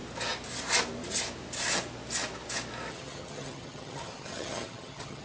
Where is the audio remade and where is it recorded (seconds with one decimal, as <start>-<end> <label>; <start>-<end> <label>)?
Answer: 0.0-2.9 recorded; 2.9-5.2 remade